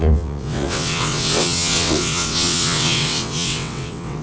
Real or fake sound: fake